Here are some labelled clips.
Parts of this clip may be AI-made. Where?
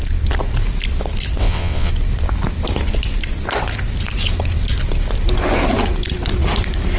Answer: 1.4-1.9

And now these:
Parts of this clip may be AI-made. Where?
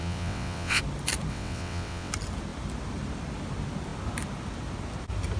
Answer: 0.0-0.8; 1.3-2.1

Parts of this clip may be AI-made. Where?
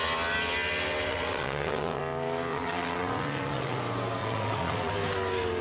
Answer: 1.1-2.0; 2.5-3.8; 4.2-4.9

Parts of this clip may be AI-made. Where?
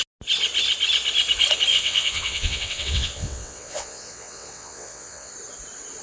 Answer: 1.7-5.3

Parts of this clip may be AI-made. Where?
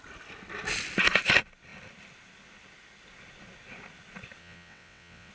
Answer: 4.4-5.3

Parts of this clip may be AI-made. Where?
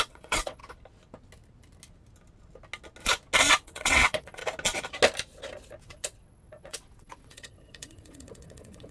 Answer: 0.0-0.6; 3.5-4.4; 5.8-8.9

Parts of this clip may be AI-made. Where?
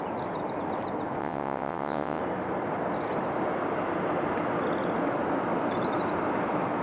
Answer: 1.2-2.2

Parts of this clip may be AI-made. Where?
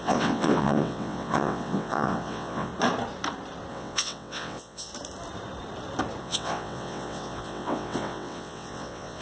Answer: 0.0-2.7; 3.7-4.9; 6.2-9.2